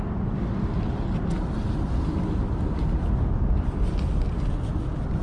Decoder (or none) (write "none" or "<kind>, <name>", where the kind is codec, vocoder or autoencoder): none